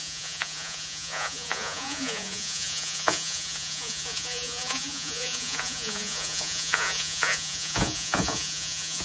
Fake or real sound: fake